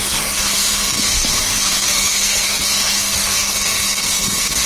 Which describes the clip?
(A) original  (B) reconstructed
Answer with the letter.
B